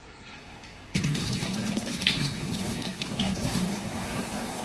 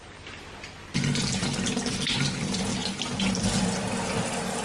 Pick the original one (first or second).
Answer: second